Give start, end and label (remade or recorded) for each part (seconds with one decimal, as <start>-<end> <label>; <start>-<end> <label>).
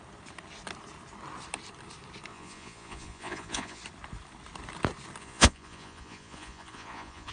0.0-2.3 recorded; 2.3-3.8 remade; 3.8-5.2 recorded; 5.2-7.3 remade